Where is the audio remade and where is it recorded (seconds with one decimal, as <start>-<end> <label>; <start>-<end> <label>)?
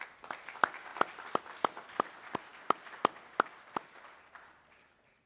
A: 0.0-5.3 recorded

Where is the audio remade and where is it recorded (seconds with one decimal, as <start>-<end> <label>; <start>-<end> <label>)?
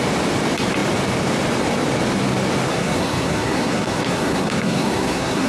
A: 0.0-2.7 recorded; 2.7-5.5 remade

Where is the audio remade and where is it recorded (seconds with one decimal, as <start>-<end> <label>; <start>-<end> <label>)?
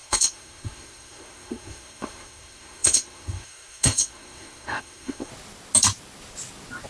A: 0.0-5.3 remade; 5.3-6.9 recorded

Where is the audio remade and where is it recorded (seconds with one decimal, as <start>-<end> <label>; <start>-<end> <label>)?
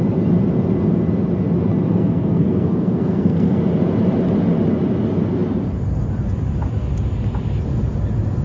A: 0.0-1.9 recorded; 1.9-3.6 remade; 3.6-8.4 recorded